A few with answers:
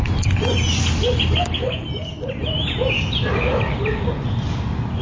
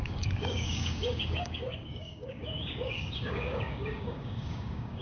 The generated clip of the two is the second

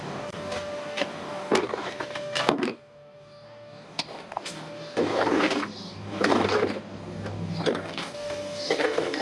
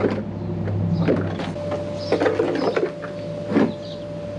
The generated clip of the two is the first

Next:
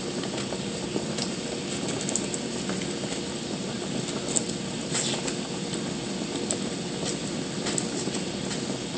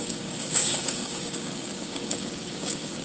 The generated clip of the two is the second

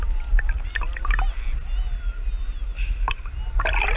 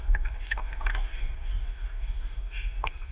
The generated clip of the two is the second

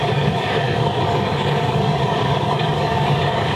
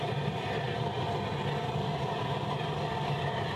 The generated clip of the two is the first